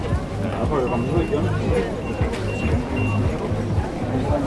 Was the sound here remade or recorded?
recorded